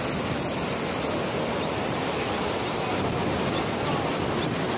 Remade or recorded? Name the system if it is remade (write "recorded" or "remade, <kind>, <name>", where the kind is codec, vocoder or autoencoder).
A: recorded